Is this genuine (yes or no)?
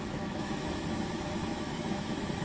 no